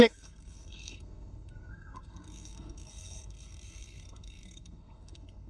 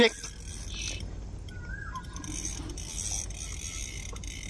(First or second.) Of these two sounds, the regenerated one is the first